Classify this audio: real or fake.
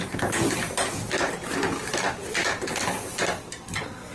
fake